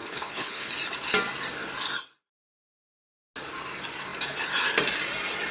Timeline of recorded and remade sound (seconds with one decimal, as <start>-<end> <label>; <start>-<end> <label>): 0.0-0.7 remade; 0.7-5.5 recorded